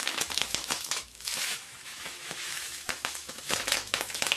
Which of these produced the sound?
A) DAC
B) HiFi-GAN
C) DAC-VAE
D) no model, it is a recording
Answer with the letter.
C